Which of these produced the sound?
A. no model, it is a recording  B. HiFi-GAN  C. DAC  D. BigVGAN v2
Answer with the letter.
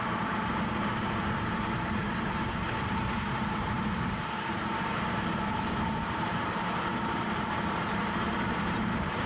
D